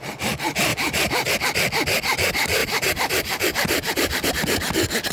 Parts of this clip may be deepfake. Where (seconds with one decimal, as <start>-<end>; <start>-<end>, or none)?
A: 0.7-1.3; 2.6-4.3